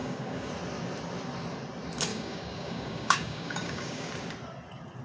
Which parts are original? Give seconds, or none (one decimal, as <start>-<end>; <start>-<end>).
0.5-2.1; 4.1-5.0